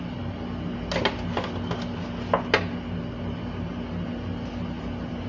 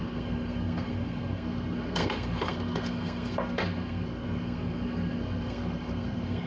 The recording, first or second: first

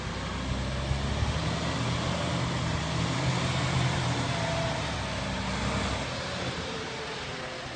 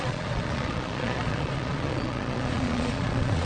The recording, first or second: first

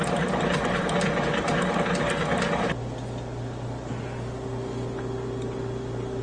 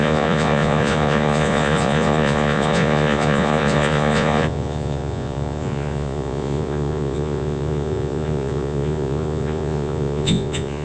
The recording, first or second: first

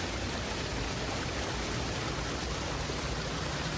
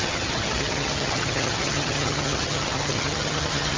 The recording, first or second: first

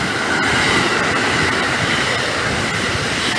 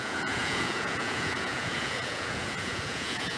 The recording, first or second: first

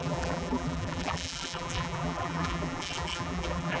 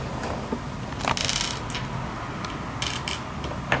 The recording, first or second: second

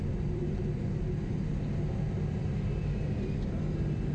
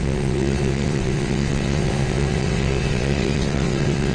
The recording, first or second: first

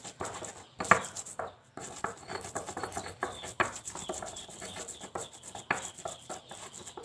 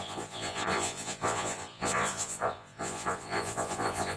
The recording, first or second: first